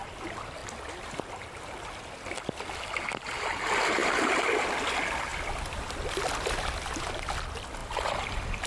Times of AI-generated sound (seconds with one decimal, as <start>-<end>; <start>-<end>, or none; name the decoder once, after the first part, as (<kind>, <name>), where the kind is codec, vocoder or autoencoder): 4.0-4.6 (vocoder, BigVGAN v2); 7.8-8.7